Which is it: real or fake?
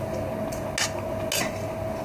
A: real